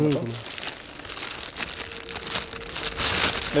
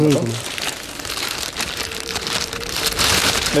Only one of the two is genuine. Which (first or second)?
first